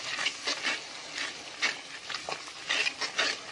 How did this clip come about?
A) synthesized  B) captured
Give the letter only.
B